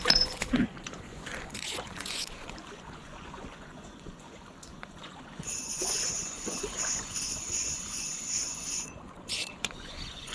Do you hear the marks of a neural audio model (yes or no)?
yes